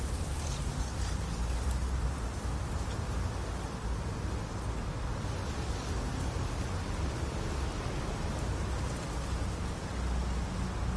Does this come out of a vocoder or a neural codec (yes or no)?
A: no